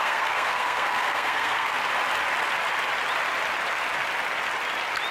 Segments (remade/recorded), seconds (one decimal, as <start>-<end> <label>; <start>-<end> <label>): 0.0-1.8 remade; 1.8-5.1 recorded